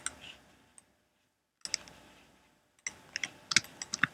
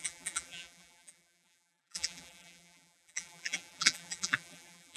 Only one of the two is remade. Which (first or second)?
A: second